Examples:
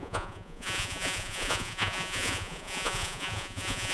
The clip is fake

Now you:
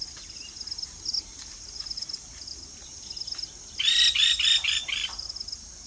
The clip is real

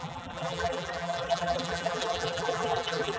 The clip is fake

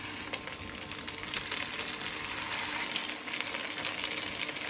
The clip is real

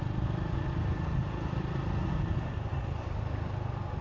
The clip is real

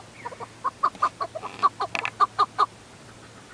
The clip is real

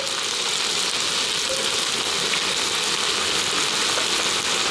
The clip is real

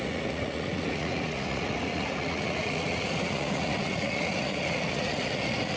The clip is fake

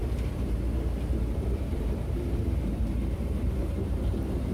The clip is fake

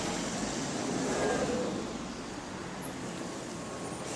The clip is real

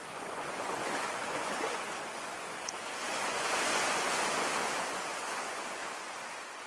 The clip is fake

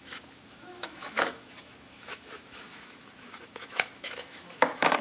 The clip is fake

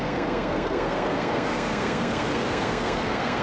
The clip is fake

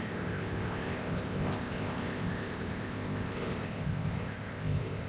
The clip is fake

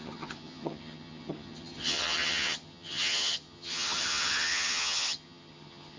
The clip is fake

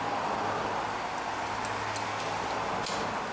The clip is real